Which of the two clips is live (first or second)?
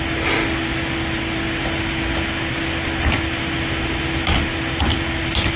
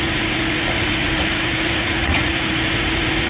first